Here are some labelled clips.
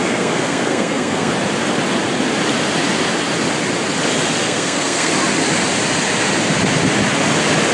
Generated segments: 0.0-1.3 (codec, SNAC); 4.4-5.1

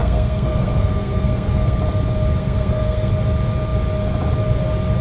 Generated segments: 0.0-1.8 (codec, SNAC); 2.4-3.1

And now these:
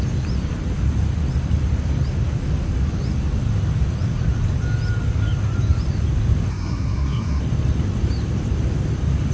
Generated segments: 6.5-7.4 (codec, SNAC)